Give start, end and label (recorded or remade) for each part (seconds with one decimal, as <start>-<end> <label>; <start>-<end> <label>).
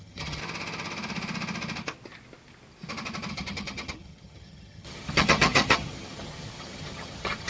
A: 0.0-0.4 remade; 0.4-3.3 recorded; 3.3-7.5 remade